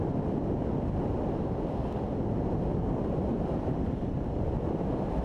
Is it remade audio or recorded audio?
recorded